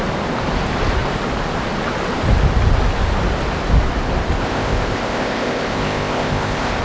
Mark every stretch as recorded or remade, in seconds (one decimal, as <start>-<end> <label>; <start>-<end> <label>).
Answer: 0.0-4.4 recorded; 4.4-6.8 remade